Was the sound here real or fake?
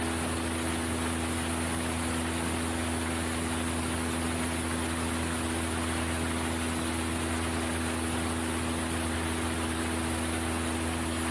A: real